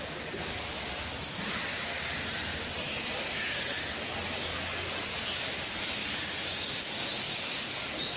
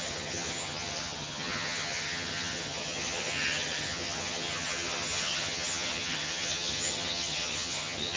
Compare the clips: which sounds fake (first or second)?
second